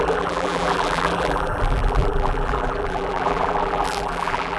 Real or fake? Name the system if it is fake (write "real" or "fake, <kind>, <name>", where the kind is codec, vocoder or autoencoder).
fake, vocoder, BigVGAN v2